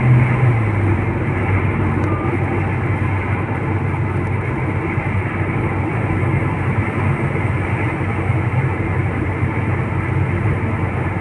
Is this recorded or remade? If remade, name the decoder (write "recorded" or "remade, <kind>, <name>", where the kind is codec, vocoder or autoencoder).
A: recorded